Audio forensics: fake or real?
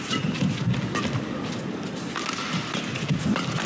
real